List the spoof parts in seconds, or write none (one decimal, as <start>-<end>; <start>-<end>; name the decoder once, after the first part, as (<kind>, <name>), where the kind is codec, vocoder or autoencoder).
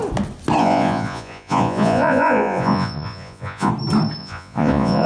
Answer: 0.6-3.7 (vocoder, Vocos); 4.2-5.1